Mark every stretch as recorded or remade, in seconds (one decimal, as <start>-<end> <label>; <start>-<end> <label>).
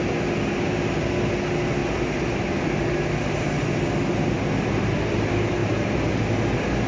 0.0-5.6 recorded; 5.6-6.2 remade; 6.2-6.9 recorded